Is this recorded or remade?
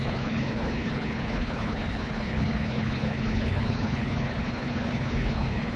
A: remade